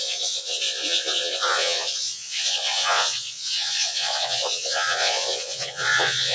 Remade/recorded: remade